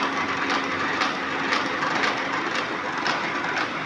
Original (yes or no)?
yes